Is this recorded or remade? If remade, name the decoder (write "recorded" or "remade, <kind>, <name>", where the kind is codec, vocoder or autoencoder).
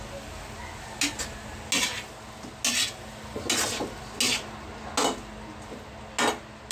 recorded